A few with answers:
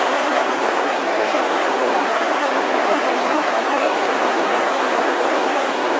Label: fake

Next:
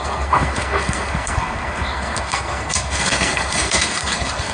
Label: fake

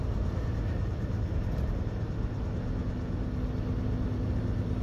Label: real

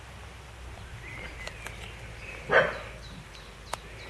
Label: real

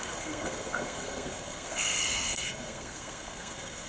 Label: fake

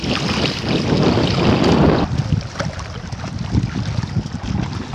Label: real